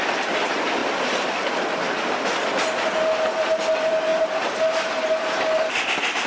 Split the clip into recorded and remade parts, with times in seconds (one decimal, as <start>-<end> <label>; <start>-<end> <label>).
0.0-6.3 recorded